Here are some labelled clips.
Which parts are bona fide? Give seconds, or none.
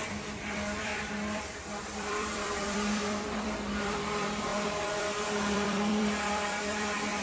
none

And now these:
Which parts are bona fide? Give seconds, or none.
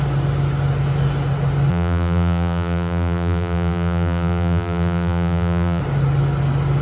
0.0-1.7; 5.8-6.8